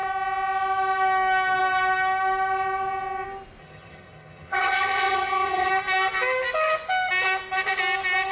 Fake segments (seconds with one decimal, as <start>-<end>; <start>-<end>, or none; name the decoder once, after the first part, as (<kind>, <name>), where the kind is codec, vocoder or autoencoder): 3.6-5.7 (vocoder, HiFi-GAN)